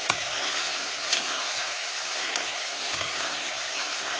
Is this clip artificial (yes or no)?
yes